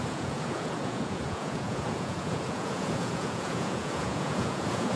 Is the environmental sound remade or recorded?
remade